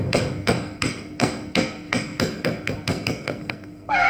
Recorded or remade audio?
remade